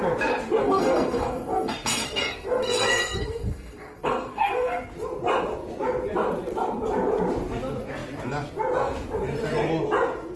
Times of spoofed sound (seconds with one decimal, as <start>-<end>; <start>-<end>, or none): 0.6-4.8